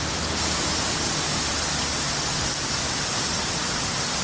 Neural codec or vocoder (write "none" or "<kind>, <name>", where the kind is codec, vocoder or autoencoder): none